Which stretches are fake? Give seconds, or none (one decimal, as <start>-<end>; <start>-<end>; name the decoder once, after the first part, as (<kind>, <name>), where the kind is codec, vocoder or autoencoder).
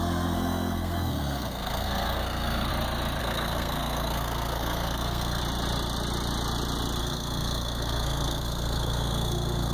0.0-2.7 (codec, SNAC); 3.2-5.4; 7.0-9.7